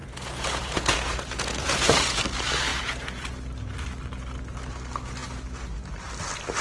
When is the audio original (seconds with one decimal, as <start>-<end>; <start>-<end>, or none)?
2.2-2.7; 3.3-6.6